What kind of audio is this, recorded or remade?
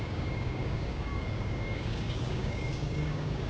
remade